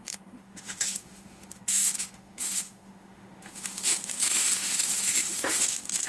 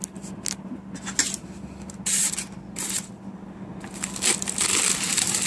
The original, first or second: second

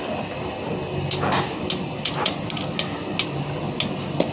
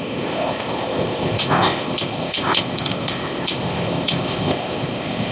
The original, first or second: first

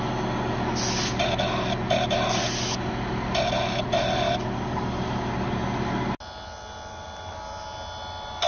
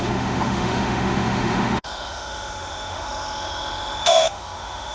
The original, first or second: first